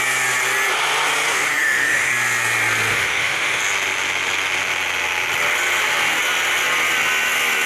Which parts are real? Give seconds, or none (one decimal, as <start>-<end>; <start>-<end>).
0.0-1.3; 2.1-2.9; 3.6-7.7